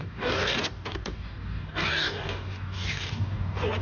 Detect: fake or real fake